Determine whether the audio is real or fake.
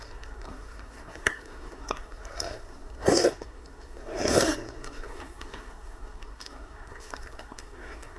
fake